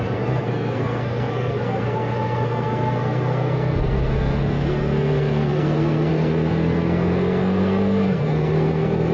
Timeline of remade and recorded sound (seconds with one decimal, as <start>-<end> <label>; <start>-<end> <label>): 0.0-9.1 remade